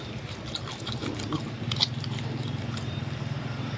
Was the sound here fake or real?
fake